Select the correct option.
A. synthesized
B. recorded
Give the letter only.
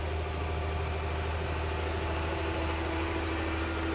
B